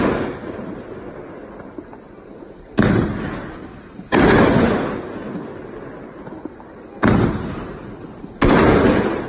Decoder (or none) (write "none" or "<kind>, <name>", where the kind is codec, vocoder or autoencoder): none